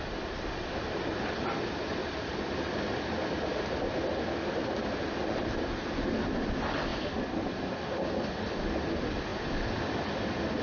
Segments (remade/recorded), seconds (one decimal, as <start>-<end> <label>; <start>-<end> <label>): 0.0-2.0 recorded; 2.0-3.0 remade; 3.0-6.9 recorded; 6.9-7.5 remade; 7.5-10.6 recorded